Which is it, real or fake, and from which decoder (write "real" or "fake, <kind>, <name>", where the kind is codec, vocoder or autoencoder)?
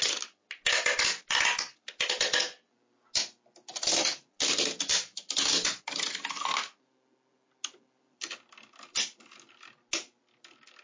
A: real